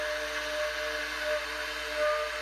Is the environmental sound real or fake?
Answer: real